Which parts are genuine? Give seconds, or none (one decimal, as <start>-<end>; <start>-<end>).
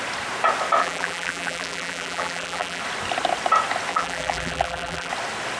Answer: 0.0-0.8; 2.8-3.9; 5.1-5.6